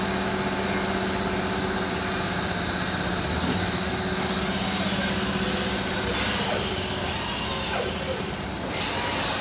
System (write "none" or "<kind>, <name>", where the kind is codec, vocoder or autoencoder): none